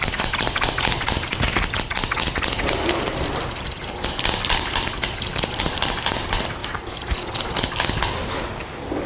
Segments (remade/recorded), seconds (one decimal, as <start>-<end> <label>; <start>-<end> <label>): 0.0-9.1 recorded

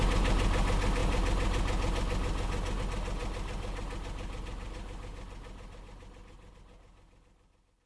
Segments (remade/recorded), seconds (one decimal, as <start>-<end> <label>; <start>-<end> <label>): 0.0-7.9 recorded

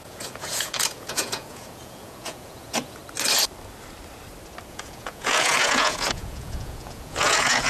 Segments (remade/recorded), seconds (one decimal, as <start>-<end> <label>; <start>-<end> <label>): 0.0-3.0 remade; 3.0-4.7 recorded; 4.7-7.7 remade

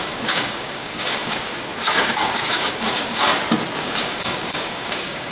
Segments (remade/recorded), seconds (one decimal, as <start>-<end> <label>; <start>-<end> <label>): 0.0-3.3 remade; 3.3-3.8 recorded; 3.8-5.3 remade

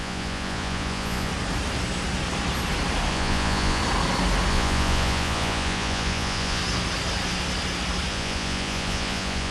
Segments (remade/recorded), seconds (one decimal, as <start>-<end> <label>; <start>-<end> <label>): 0.0-1.3 remade; 1.3-3.1 recorded; 3.1-3.8 remade; 3.8-4.5 recorded; 4.5-6.6 remade; 6.6-8.1 recorded; 8.1-9.5 remade

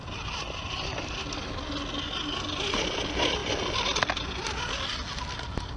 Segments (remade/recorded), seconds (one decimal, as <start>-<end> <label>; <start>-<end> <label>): 0.0-5.8 recorded